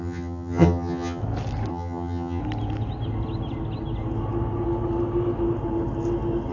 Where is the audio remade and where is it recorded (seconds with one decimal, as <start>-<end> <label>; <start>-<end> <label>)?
0.0-1.2 remade; 1.2-1.7 recorded; 1.7-2.4 remade; 2.4-6.5 recorded